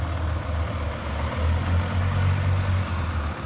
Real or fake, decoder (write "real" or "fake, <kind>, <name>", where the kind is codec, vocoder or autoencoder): real